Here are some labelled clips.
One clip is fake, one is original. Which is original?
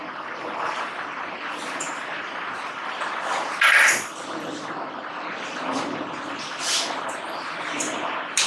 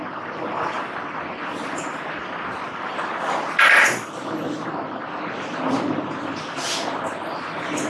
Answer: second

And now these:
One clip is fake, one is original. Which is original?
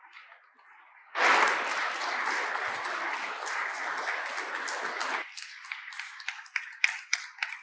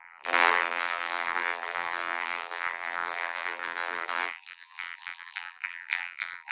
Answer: first